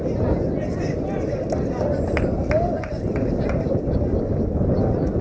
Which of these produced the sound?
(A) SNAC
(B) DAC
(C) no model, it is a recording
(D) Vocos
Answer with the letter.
C